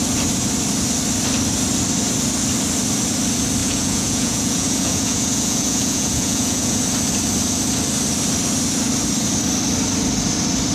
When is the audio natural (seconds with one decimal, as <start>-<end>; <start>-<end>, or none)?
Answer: 0.0-3.6; 6.8-10.7